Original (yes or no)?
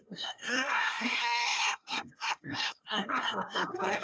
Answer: no